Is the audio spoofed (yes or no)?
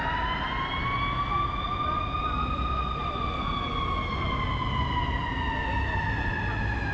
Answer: no